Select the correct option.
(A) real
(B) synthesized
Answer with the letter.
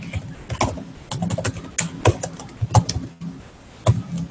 A